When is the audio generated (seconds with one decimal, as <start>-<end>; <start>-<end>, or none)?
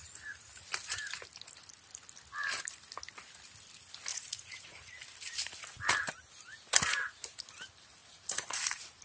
4.1-5.0; 8.0-8.6